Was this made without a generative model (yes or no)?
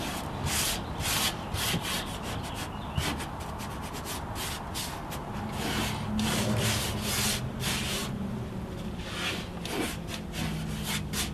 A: yes